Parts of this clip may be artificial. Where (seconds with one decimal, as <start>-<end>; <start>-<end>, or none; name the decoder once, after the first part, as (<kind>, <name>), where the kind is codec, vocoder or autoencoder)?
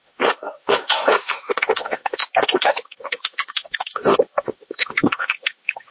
0.0-5.9 (autoencoder, DAC-VAE)